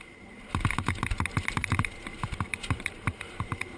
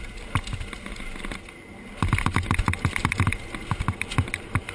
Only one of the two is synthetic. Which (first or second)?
first